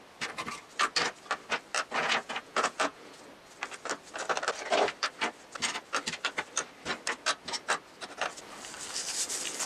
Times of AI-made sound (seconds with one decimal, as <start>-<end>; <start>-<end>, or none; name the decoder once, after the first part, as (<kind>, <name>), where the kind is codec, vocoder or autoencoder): 2.0-3.2 (vocoder, Vocos)